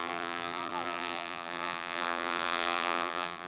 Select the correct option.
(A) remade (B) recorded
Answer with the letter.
A